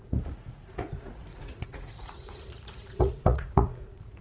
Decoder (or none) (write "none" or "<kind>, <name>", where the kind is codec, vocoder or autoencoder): vocoder, Vocos